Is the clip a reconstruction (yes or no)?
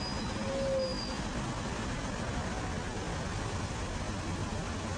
no